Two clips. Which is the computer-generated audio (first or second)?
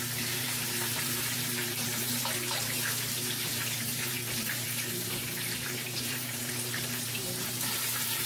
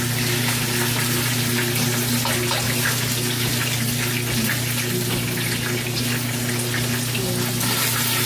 first